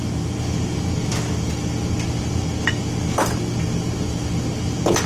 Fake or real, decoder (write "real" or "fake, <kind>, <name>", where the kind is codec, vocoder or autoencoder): real